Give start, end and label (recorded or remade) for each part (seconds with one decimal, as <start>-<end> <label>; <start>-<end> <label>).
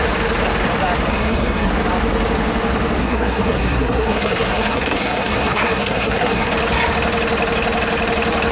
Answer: 0.0-1.1 recorded; 1.1-1.7 remade; 1.7-3.0 recorded; 3.0-6.5 remade; 6.5-8.5 recorded